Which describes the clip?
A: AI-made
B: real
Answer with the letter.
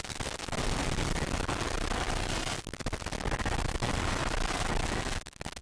B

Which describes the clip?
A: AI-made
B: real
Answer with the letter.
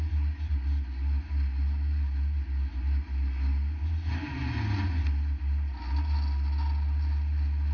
B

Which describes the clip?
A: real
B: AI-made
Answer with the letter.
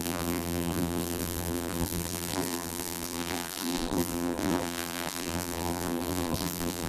B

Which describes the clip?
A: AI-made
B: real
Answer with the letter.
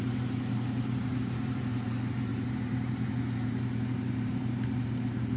A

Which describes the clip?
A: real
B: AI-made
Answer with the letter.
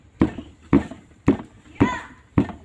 B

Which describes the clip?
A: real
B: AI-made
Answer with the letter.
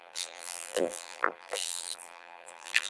B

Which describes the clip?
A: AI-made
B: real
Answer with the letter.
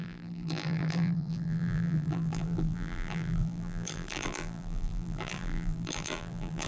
A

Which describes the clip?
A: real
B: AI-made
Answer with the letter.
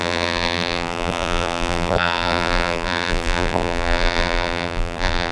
B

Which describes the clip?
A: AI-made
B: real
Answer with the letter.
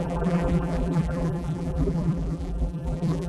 A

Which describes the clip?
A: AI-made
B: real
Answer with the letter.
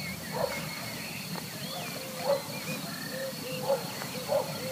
B